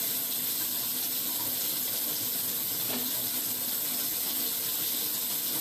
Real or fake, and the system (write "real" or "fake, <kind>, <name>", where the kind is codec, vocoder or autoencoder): real